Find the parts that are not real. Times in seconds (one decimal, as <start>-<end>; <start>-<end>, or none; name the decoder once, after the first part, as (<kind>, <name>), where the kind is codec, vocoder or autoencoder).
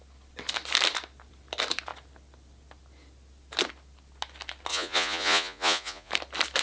4.7-6.1 (vocoder, Vocos)